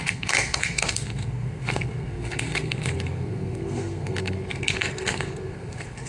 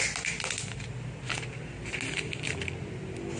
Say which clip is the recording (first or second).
second